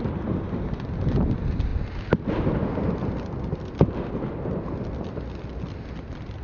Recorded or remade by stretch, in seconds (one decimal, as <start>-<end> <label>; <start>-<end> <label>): 0.0-6.4 recorded